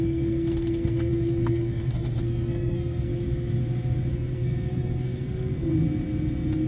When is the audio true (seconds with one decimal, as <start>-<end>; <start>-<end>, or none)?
3.1-4.1; 5.7-6.7